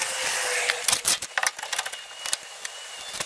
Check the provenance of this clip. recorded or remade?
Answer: recorded